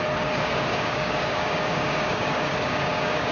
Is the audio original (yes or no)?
no